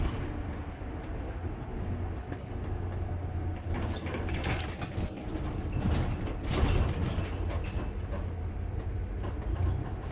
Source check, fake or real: real